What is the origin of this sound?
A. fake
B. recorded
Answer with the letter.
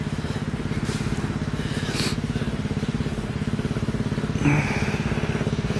B